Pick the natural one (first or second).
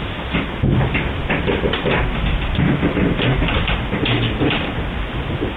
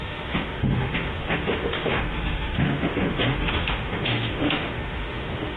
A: first